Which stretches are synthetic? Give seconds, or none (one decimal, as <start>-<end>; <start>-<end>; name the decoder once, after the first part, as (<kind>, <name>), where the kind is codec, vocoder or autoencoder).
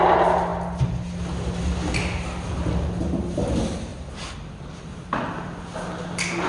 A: none